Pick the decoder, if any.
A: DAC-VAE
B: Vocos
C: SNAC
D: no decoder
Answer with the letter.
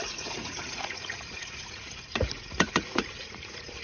B